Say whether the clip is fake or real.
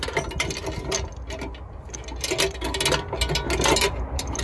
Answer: real